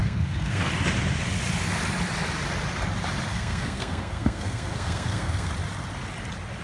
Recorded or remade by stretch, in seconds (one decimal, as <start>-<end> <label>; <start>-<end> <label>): 0.0-0.7 remade; 0.7-3.3 recorded; 3.3-5.5 remade; 5.5-6.6 recorded